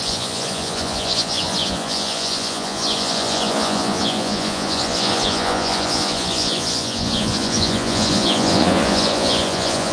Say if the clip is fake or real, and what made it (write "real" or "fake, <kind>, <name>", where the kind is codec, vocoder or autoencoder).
fake, vocoder, Vocos